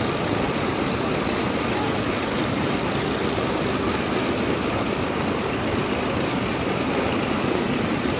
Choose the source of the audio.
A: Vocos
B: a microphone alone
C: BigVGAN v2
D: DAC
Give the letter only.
B